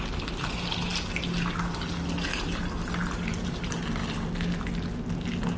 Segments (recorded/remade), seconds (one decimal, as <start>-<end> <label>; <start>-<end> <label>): 0.0-5.6 recorded

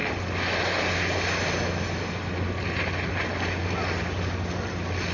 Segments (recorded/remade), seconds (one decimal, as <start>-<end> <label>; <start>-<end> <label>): 0.0-5.1 recorded

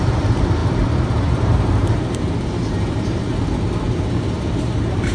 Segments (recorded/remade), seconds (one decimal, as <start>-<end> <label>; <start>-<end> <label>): 0.0-5.1 remade

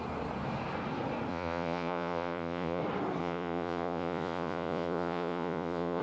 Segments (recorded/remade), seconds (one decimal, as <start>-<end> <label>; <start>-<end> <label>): 0.0-1.3 recorded; 1.3-2.8 remade; 2.8-3.2 recorded; 3.2-6.0 remade